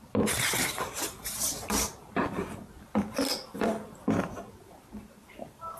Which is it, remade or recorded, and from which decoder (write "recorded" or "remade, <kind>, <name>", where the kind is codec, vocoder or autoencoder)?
remade, vocoder, BigVGAN v2